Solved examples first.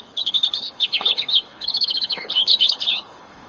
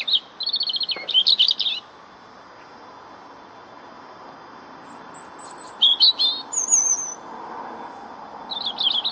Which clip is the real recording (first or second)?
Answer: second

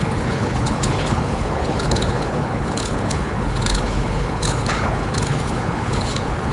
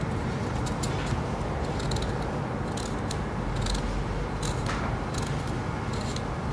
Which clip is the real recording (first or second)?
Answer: second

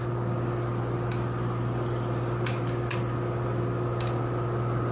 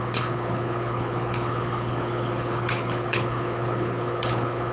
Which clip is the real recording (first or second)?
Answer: first